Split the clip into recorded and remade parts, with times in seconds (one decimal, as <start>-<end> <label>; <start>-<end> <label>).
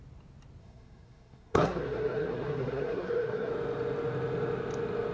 0.0-0.6 recorded; 0.6-3.5 remade; 3.5-5.1 recorded